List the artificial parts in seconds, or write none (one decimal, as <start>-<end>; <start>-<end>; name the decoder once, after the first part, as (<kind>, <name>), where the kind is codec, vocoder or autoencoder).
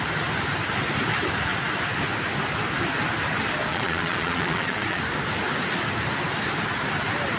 3.7-5.0 (vocoder, Vocos)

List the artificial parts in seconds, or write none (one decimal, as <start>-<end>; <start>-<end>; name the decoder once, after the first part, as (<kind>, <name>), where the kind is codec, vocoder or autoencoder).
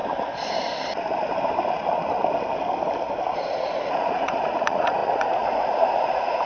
3.9-6.5 (vocoder, Vocos)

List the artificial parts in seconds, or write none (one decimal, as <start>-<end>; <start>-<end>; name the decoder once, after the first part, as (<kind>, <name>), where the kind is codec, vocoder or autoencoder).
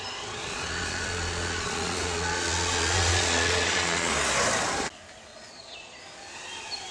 0.4-4.1 (vocoder, Vocos); 5.3-6.0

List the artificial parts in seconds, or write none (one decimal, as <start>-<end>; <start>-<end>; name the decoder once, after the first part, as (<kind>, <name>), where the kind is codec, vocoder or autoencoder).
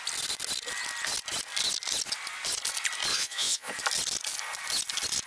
3.1-3.7 (vocoder, Vocos)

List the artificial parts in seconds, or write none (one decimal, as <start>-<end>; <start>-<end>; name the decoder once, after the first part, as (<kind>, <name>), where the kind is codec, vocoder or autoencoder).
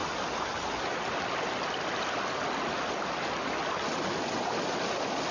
none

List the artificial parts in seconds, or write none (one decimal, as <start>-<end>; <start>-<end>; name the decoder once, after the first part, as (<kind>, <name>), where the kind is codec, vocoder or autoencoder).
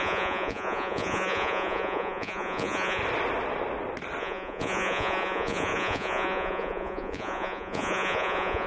0.0-3.0 (vocoder, Vocos); 4.2-8.7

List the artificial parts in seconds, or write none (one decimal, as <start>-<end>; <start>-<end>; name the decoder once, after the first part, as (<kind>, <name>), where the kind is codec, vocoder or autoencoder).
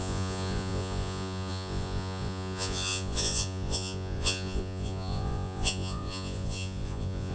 0.0-7.3 (vocoder, Vocos)